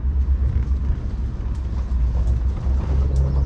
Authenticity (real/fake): real